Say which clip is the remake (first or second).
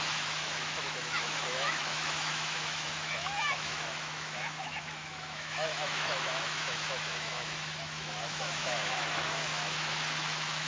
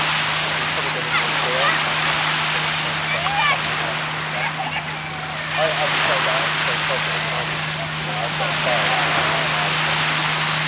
first